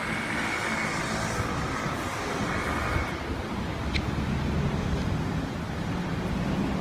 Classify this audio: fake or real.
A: real